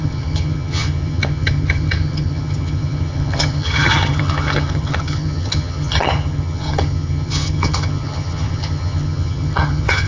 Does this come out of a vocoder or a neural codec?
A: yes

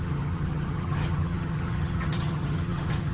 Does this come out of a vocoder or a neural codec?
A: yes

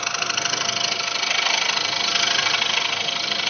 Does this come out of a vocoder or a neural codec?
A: no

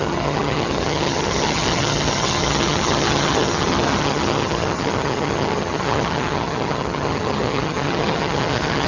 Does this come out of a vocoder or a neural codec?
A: yes